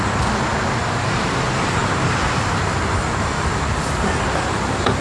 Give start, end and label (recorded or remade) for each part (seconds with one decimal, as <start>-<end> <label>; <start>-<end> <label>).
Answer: 0.0-1.8 recorded; 1.8-5.0 remade